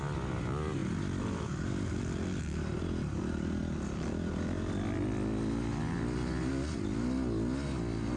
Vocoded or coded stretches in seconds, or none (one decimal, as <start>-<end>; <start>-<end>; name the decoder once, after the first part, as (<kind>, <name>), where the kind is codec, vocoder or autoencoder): none